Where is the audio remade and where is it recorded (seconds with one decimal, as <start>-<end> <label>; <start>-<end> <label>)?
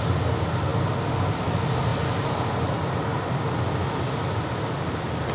0.0-5.3 recorded